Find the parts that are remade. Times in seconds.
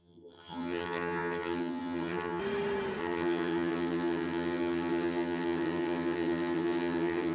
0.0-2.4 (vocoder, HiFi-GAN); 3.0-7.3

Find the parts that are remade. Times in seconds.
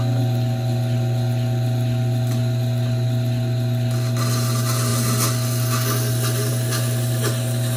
none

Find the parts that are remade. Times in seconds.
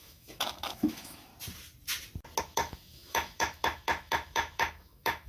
0.0-1.3 (autoencoder, DAC-VAE); 2.4-5.3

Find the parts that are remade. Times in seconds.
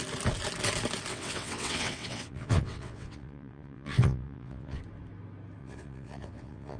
1.1-4.8 (vocoder, WaveNeXt); 5.6-6.8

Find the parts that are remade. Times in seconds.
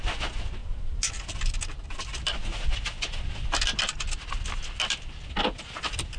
2.4-3.1 (vocoder, BigVGAN v2)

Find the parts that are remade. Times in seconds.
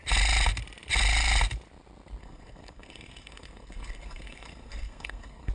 2.2-5.5 (codec, SNAC)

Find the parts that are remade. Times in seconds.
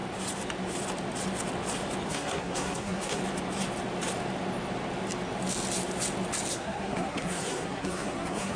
2.1-3.2 (codec, SNAC); 6.5-8.6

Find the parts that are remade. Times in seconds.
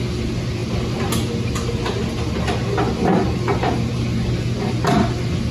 none